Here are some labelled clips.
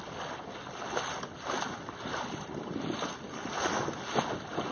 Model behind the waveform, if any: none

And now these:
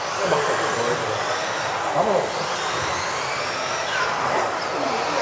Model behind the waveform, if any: none